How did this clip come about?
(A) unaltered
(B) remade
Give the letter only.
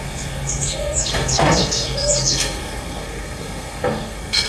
B